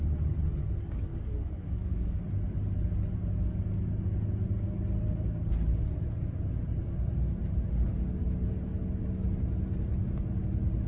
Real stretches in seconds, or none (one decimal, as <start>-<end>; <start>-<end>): 0.0-1.1; 2.2-10.9